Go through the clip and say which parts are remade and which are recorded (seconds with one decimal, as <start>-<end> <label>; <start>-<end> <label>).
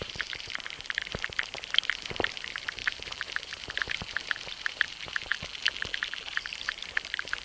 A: 0.0-5.3 remade; 5.3-6.2 recorded; 6.2-7.4 remade